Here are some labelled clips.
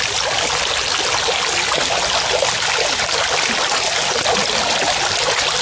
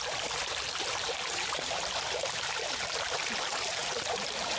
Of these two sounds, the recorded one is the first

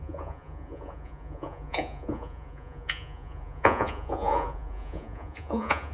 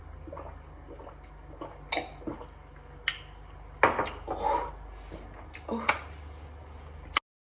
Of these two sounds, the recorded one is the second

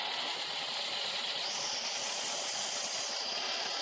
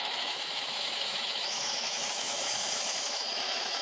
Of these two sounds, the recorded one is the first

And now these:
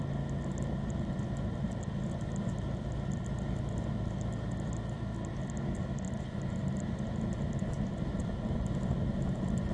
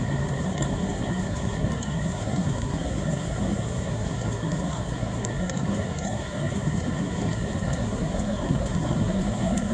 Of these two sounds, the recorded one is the first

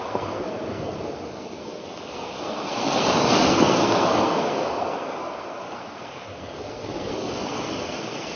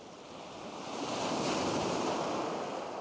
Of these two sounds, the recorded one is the second